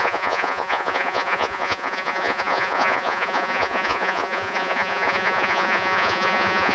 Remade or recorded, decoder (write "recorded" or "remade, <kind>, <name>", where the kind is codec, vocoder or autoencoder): remade, vocoder, Vocos